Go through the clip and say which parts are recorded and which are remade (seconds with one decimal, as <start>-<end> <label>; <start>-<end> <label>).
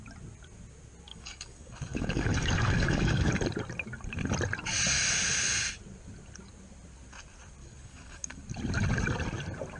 0.0-1.1 recorded; 1.1-3.3 remade; 3.3-7.6 recorded; 7.6-8.4 remade; 8.4-9.8 recorded